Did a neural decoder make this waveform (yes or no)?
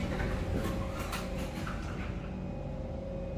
no